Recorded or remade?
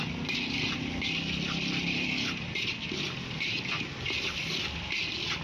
recorded